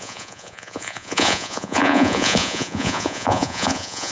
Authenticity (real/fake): fake